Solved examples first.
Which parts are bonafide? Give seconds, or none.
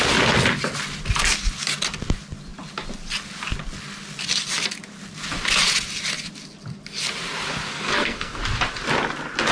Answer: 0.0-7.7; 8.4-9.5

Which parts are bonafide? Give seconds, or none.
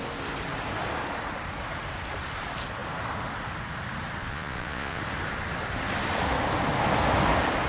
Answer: 0.0-4.2; 5.0-7.7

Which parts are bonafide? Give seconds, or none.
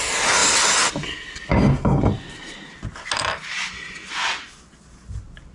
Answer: 0.0-5.5